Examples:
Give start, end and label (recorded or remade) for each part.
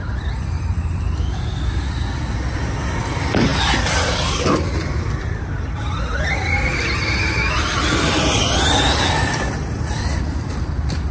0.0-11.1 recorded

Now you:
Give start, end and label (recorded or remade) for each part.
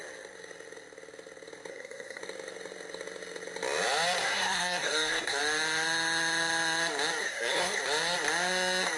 0.0-1.7 recorded; 1.7-2.2 remade; 2.2-4.2 recorded; 4.2-5.4 remade; 5.4-7.2 recorded; 7.2-7.8 remade; 7.8-9.0 recorded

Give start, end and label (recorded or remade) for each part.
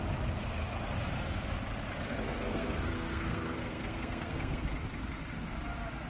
0.0-2.1 recorded; 2.1-4.7 remade; 4.7-6.1 recorded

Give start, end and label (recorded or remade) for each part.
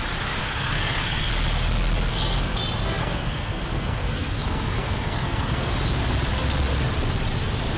0.0-0.4 recorded; 0.4-1.3 remade; 1.3-2.1 recorded; 2.1-2.6 remade; 2.6-3.0 recorded; 3.0-5.7 remade; 5.7-7.8 recorded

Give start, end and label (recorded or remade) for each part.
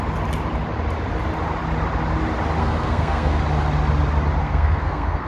0.0-2.6 recorded; 2.6-3.4 remade; 3.4-4.4 recorded; 4.4-5.3 remade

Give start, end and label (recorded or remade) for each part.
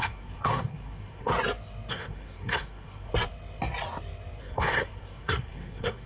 0.0-1.3 remade; 1.3-1.9 recorded; 1.9-3.1 remade; 3.1-4.4 recorded; 4.4-6.1 remade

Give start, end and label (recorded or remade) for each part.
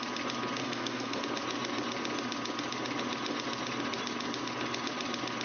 0.0-0.6 recorded; 0.6-1.2 remade; 1.2-5.4 recorded